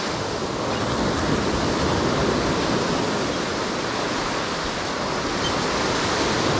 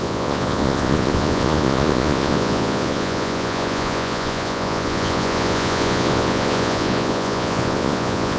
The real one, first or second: first